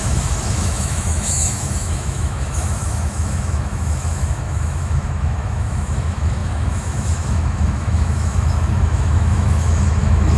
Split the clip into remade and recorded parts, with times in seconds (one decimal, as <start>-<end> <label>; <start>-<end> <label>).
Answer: 0.0-10.4 remade